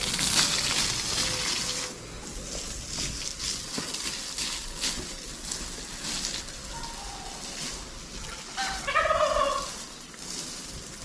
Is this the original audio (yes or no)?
yes